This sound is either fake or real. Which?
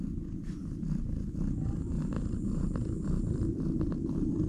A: fake